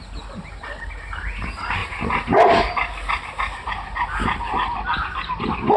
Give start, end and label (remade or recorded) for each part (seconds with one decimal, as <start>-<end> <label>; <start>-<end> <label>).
0.0-5.8 recorded